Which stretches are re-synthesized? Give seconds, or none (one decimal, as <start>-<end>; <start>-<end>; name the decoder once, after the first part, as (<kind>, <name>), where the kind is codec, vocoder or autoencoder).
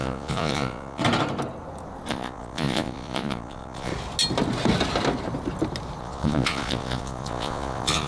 0.0-1.0 (vocoder, Vocos); 2.1-3.9; 6.0-8.1